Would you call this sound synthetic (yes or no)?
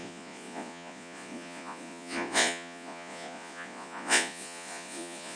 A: yes